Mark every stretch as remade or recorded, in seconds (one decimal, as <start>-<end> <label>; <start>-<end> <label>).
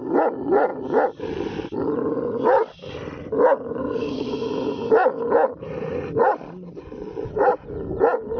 0.0-3.8 recorded; 3.8-4.3 remade; 4.3-8.4 recorded